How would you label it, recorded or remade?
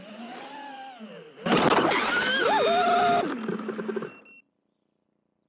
recorded